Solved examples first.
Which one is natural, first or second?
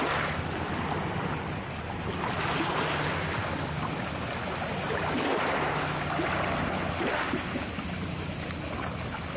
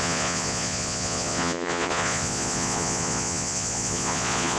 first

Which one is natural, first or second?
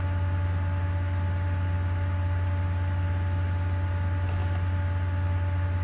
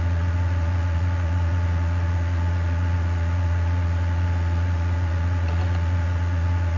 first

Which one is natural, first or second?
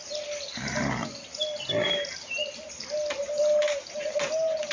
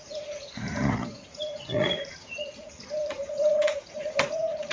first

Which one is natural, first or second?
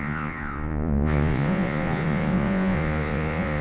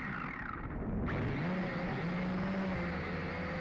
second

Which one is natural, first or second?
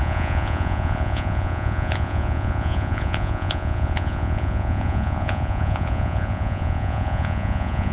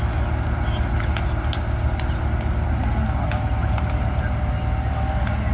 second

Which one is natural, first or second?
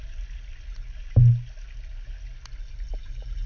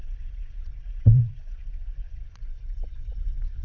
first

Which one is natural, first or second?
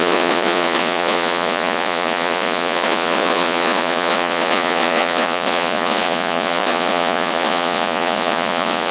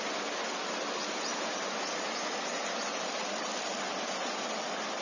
second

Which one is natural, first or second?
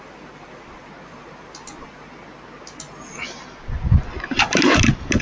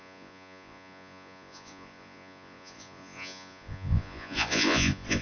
first